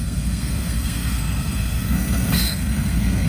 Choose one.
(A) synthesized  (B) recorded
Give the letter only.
A